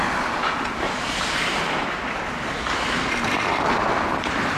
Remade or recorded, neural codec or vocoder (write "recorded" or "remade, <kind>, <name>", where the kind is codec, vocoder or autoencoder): remade, vocoder, BigVGAN v2